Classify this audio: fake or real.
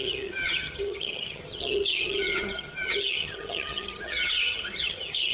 fake